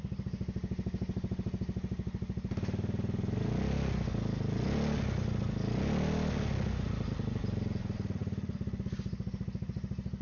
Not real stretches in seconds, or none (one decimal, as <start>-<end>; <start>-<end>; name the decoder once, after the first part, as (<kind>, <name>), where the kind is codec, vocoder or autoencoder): none